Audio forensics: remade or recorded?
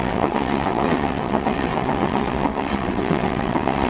remade